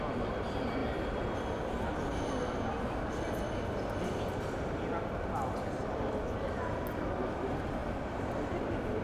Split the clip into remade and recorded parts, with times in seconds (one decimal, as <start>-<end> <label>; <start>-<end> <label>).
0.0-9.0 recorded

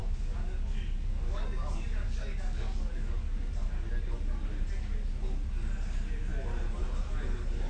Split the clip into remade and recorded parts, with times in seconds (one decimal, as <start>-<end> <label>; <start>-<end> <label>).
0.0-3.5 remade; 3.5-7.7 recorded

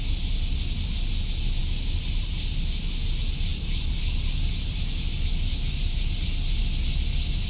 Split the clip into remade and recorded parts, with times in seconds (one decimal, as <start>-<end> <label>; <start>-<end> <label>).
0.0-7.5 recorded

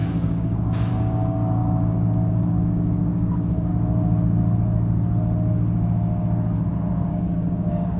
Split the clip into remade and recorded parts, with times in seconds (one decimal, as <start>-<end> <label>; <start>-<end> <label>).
0.0-3.7 remade; 3.7-7.1 recorded; 7.1-8.0 remade

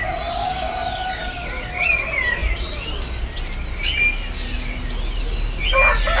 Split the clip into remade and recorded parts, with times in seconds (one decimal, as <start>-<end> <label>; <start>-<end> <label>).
0.0-0.4 recorded; 0.4-1.5 remade; 1.5-6.2 recorded

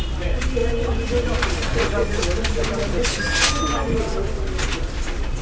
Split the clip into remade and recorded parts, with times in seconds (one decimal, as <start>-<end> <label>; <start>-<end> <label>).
0.0-5.4 recorded

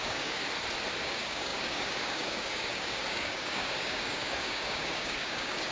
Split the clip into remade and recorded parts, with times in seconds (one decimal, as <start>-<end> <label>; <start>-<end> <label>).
0.0-0.4 remade; 0.4-1.0 recorded; 1.0-5.7 remade